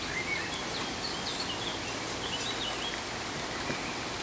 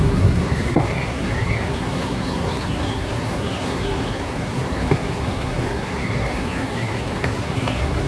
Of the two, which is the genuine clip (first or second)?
first